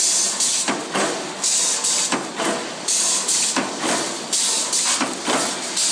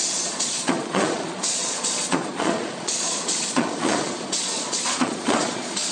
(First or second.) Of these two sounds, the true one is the first